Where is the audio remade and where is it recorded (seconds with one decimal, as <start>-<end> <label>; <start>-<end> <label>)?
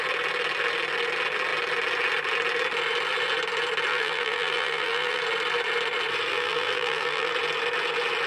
0.0-3.9 recorded; 3.9-5.2 remade; 5.2-6.3 recorded; 6.3-7.3 remade; 7.3-8.3 recorded